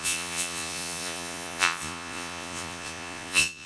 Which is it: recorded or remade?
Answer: remade